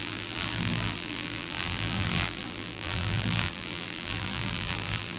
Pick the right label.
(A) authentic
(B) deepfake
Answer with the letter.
B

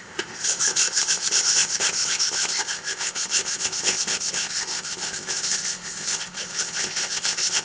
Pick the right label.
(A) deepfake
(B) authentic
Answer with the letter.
A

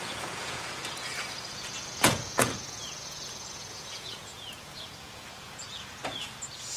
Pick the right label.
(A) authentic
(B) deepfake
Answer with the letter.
B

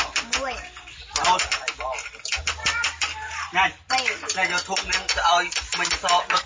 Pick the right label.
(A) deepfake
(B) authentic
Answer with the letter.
B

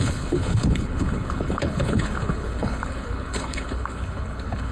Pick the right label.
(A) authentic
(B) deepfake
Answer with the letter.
B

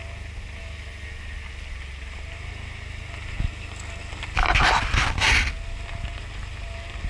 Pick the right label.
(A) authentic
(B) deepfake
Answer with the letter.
A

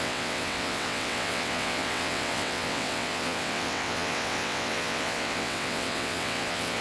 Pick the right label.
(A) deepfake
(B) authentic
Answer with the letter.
A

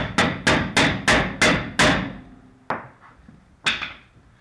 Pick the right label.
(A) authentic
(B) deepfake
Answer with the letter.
A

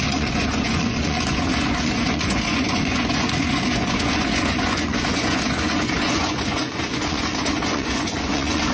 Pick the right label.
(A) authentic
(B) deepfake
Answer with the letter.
B